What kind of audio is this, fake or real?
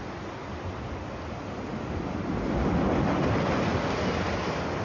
real